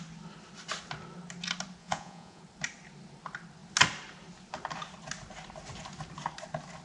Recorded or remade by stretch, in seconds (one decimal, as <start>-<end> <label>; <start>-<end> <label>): 0.0-1.8 recorded; 1.8-2.4 remade; 2.4-6.8 recorded

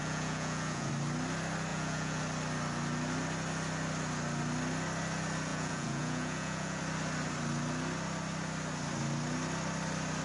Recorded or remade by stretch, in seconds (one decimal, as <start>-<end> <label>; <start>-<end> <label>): 0.0-0.9 remade; 0.9-1.7 recorded; 1.7-2.2 remade; 2.2-5.5 recorded; 5.5-6.8 remade; 6.8-10.2 recorded